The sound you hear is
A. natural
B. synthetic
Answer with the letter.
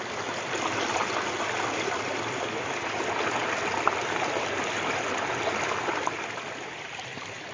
A